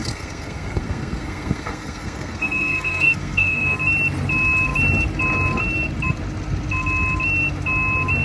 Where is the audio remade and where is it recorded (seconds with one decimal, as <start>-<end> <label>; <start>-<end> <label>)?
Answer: 0.0-3.8 remade; 3.8-8.2 recorded